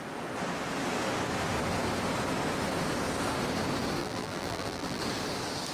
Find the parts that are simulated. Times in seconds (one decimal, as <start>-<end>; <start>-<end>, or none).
4.0-5.0